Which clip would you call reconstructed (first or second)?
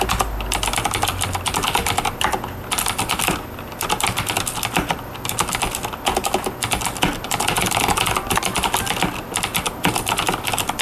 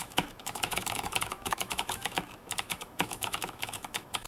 second